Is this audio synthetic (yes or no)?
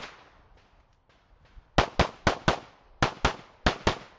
no